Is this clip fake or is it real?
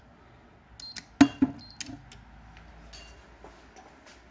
real